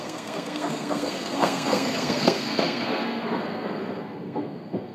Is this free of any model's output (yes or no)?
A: no